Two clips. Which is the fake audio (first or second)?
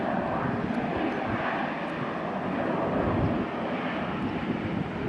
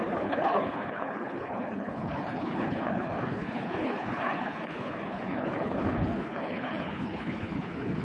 second